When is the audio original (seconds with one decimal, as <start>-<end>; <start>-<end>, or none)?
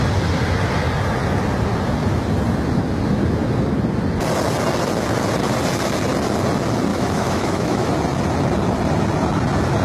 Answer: 0.0-6.9; 7.9-9.8